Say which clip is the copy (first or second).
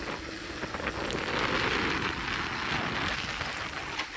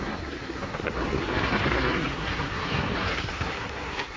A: second